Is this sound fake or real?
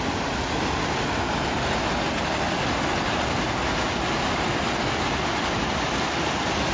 real